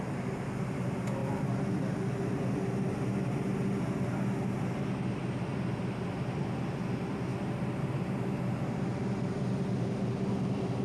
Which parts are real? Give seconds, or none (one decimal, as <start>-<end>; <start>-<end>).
0.0-10.8